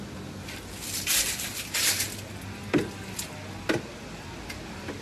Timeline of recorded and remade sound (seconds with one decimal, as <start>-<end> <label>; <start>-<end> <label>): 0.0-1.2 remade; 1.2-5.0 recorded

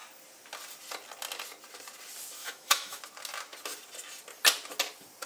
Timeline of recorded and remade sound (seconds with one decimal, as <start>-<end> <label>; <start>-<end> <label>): 0.0-2.4 recorded; 2.4-3.0 remade; 3.0-5.3 recorded

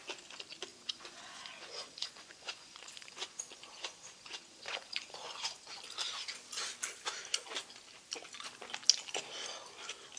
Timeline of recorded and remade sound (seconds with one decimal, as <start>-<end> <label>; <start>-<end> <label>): 0.0-0.7 recorded; 0.7-5.8 remade; 5.8-10.2 recorded